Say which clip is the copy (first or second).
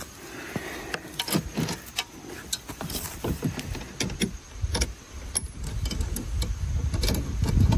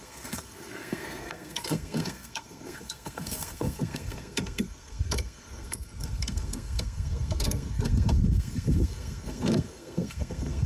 second